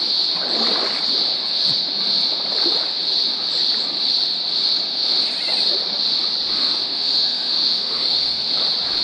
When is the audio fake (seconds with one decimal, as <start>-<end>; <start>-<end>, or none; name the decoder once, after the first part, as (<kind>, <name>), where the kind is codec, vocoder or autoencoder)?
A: 6.6-8.5 (autoencoder, DAC-VAE)